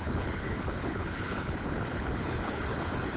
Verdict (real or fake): fake